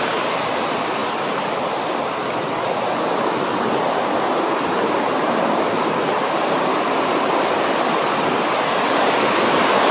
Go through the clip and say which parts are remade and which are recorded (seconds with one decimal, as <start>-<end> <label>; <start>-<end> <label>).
0.0-9.9 recorded